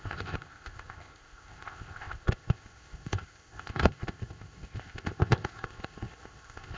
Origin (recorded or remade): remade